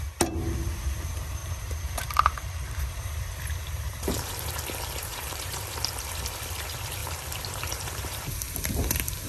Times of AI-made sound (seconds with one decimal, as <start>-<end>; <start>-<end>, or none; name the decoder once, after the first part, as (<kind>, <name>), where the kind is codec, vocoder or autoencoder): 1.4-4.3 (vocoder, BigVGAN v2); 5.1-5.7; 7.0-8.7